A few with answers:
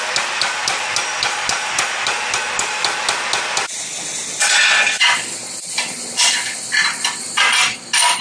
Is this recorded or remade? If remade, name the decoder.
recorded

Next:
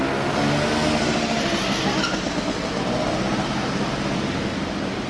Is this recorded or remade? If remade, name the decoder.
recorded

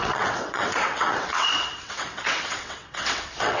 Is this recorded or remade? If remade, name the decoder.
remade, vocoder, WaveNeXt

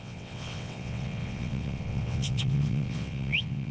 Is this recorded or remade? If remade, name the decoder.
remade, vocoder, WaveNeXt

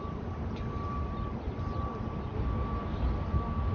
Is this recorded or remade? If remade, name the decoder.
recorded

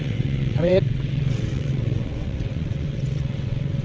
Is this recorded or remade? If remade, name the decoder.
remade, vocoder, WaveNeXt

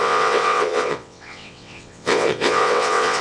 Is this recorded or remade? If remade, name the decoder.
remade, vocoder, WaveNeXt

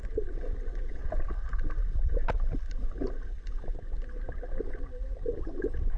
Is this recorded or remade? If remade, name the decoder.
recorded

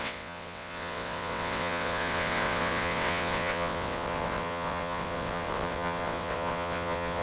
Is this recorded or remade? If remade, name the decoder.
remade, vocoder, WaveNeXt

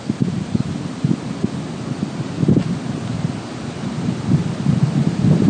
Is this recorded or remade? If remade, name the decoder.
recorded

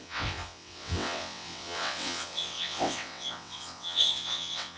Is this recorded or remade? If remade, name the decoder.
remade, vocoder, WaveNeXt